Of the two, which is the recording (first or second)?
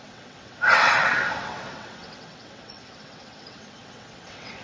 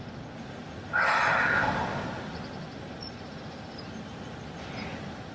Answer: second